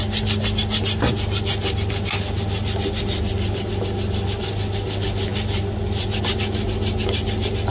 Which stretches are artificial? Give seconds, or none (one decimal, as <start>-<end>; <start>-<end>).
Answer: none